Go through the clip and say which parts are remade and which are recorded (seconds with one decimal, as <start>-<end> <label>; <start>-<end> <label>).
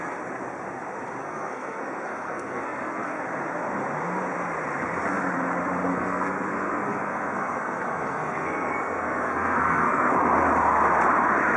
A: 0.0-1.2 recorded; 1.2-3.2 remade; 3.2-5.9 recorded; 5.9-10.1 remade; 10.1-11.6 recorded